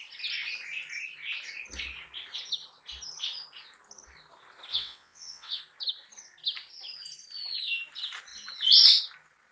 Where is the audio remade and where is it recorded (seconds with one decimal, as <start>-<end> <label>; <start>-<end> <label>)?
0.0-4.7 recorded; 4.7-5.6 remade; 5.6-9.5 recorded